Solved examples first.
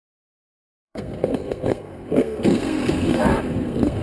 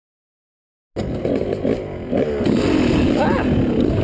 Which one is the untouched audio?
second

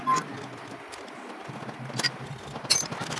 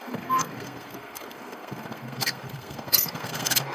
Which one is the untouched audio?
first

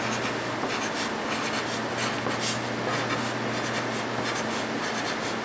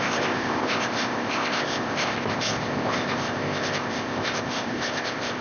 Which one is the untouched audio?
first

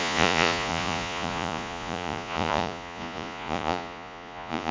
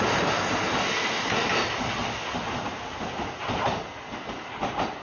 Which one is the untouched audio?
second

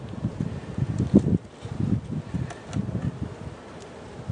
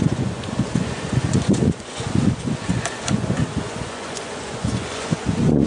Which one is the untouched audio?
first